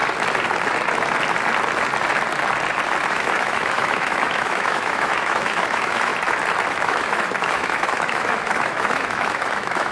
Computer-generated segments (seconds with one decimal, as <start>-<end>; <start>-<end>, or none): 3.1-6.1; 6.7-9.9